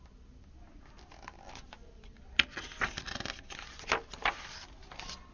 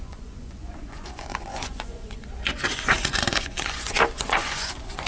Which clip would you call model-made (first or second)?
second